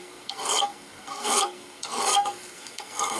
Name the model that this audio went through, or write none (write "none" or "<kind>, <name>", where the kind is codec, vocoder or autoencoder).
codec, SNAC